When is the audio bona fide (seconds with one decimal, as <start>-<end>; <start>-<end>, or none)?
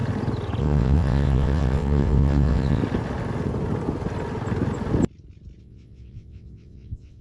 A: 0.0-0.6; 2.8-5.6